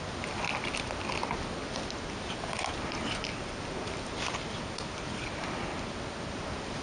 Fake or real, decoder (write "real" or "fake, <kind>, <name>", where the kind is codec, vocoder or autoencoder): real